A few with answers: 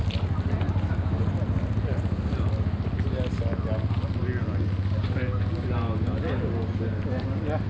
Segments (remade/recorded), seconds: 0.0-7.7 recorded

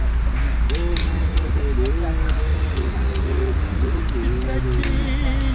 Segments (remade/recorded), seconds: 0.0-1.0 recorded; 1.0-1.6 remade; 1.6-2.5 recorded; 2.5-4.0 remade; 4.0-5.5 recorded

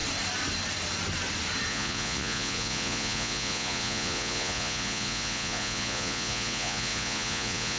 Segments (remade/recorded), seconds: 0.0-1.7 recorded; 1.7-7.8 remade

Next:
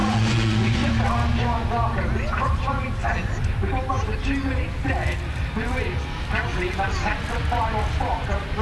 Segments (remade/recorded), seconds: 0.0-0.9 remade; 0.9-8.6 recorded